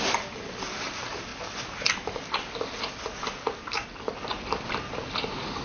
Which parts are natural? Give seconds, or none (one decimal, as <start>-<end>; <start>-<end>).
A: 0.0-5.6